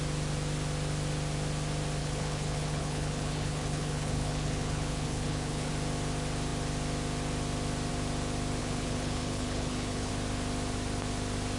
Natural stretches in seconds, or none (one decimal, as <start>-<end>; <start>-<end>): 0.0-2.0; 5.7-8.6; 10.1-11.6